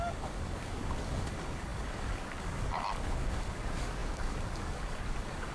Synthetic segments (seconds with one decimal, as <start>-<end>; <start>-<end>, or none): 0.0-5.5